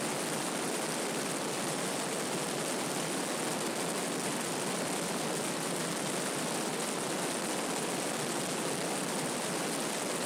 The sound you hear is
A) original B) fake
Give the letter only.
A